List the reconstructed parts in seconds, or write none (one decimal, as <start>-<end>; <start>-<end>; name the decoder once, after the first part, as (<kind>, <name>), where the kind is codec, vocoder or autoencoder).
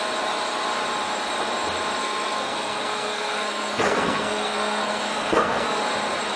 2.0-5.8 (codec, SNAC)